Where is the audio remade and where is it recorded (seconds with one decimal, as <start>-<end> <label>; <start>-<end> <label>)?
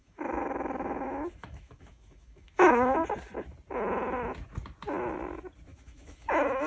0.0-2.7 remade; 2.7-5.7 recorded; 5.7-6.3 remade; 6.3-6.7 recorded